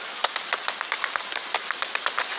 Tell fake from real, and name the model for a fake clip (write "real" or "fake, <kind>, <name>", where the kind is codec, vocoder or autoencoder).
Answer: real